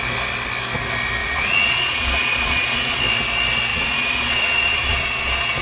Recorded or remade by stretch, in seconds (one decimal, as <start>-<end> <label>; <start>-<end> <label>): 0.0-1.2 recorded; 1.2-3.0 remade; 3.0-3.7 recorded; 3.7-5.6 remade